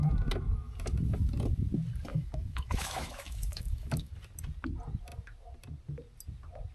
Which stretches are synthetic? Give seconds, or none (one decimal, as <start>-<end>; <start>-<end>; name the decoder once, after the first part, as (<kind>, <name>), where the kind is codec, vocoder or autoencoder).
2.1-4.1 (autoencoder, DAC-VAE)